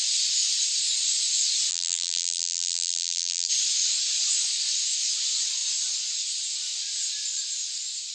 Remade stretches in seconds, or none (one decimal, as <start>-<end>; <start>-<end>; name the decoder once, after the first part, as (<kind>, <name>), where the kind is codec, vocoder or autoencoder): 1.7-3.5 (vocoder, BigVGAN v2)